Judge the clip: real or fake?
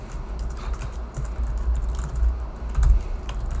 real